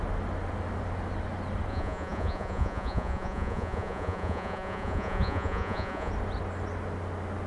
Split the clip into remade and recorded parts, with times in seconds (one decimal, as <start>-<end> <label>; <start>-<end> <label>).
0.0-1.7 recorded; 1.7-6.1 remade; 6.1-7.5 recorded